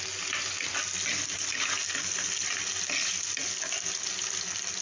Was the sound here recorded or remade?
recorded